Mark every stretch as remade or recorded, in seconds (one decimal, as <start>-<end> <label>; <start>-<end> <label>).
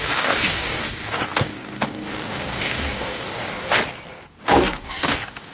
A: 0.0-3.8 remade; 3.8-4.4 recorded; 4.4-5.5 remade